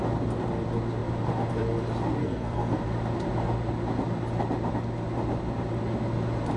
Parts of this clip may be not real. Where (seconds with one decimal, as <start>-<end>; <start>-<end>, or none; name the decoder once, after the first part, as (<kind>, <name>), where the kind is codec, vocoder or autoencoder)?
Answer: 2.2-2.8 (codec, SNAC)